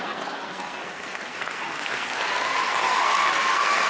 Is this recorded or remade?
remade